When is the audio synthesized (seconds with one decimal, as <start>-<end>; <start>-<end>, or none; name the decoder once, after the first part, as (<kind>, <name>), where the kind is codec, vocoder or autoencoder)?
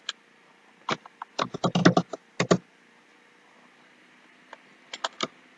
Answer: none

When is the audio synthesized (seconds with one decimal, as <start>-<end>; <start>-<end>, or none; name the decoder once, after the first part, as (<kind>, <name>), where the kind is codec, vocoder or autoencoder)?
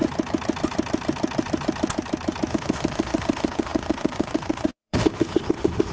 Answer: 2.5-5.9 (autoencoder, DAC-VAE)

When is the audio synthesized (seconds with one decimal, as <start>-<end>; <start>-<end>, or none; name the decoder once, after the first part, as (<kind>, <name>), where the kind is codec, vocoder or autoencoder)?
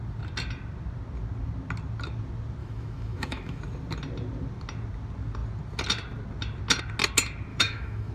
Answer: 2.6-3.6 (autoencoder, DAC-VAE); 7.5-8.1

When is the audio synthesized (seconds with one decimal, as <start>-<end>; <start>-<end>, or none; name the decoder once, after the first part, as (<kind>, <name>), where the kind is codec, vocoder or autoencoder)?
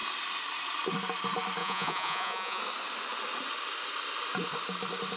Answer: 1.6-2.6 (vocoder, Vocos)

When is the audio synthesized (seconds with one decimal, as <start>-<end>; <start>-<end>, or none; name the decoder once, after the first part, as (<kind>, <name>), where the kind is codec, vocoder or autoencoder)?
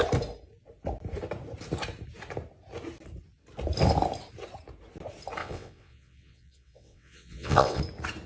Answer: 5.4-7.8 (vocoder, WaveNeXt)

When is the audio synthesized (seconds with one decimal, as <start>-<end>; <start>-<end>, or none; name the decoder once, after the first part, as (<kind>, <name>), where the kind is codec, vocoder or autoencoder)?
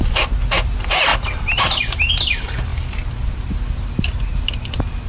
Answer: none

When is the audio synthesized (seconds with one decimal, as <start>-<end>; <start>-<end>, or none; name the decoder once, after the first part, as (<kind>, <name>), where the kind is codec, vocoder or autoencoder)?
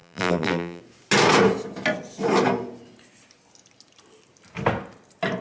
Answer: 0.0-0.8 (vocoder, BigVGAN v2)